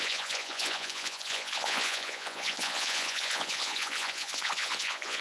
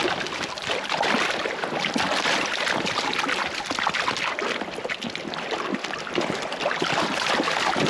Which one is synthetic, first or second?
first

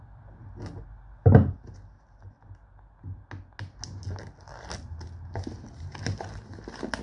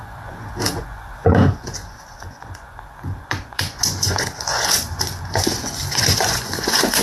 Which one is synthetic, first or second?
second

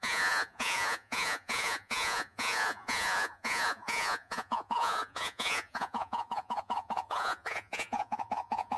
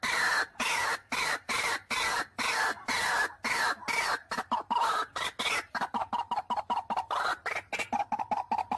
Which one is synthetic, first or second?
first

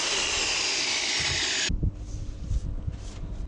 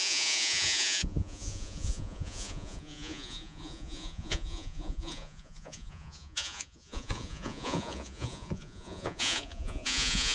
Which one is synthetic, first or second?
second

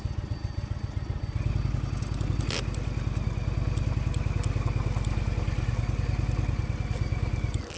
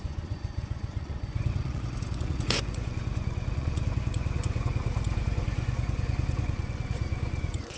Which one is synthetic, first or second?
second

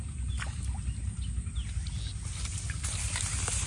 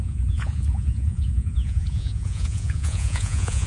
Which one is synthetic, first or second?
second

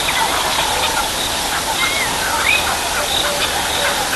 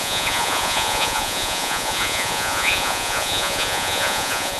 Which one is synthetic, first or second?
second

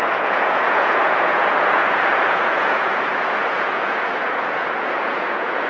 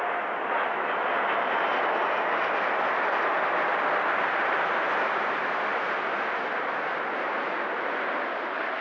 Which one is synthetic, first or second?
first